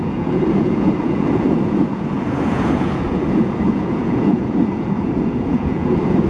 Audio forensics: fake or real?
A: fake